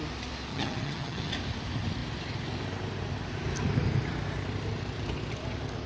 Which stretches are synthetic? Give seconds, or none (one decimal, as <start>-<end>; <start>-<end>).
0.5-1.3

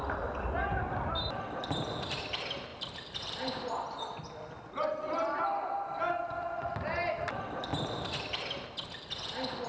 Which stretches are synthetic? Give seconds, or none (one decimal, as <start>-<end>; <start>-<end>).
2.7-3.7; 7.7-8.2